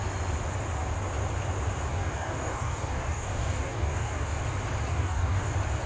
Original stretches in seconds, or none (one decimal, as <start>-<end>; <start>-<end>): 0.0-1.9; 4.4-4.9; 5.5-5.9

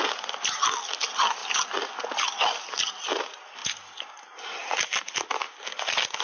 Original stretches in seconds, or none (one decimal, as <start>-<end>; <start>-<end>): 0.0-6.2

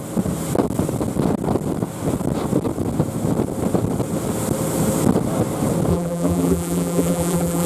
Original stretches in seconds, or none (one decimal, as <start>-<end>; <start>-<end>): 0.0-5.9

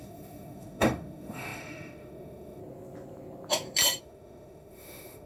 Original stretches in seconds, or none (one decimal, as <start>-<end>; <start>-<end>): 2.6-4.0

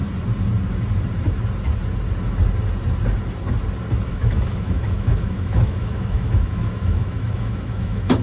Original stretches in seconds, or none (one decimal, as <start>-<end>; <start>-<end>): 0.0-4.1

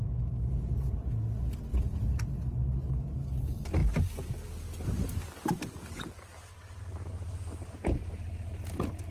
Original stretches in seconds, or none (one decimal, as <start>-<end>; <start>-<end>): 0.0-9.1

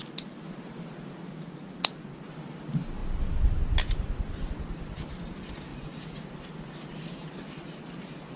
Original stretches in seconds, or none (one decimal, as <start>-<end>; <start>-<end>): 0.0-1.2; 1.9-5.7; 6.2-8.4